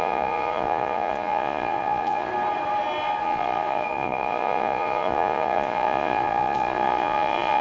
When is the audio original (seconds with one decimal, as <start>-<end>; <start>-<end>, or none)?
2.3-3.2

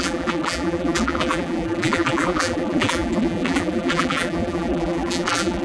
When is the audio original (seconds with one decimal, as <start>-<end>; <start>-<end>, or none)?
none

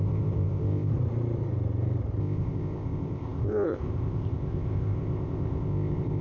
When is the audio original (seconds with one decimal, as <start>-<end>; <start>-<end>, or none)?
0.9-2.2

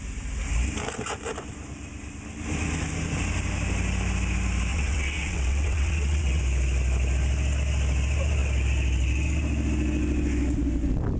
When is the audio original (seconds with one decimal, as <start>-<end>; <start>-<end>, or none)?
0.0-4.7; 6.4-11.2

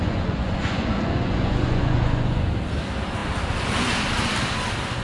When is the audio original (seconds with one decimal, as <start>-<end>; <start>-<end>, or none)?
2.5-5.0

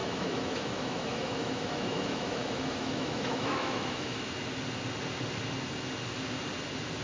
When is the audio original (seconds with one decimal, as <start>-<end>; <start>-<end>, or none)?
4.2-7.0

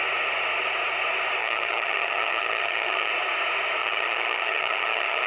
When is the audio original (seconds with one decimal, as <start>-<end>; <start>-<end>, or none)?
0.0-1.4; 3.1-3.8